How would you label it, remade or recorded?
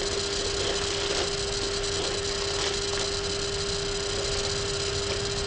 recorded